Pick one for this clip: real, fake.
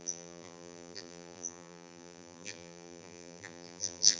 fake